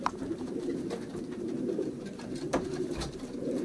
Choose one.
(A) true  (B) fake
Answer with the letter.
B